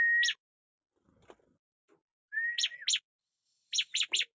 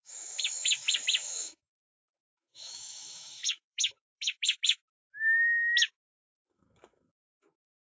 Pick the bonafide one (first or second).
first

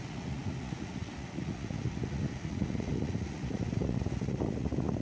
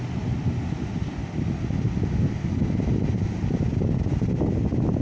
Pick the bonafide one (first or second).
second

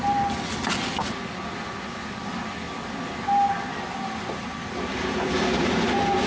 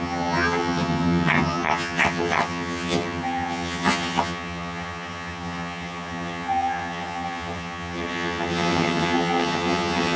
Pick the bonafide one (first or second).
first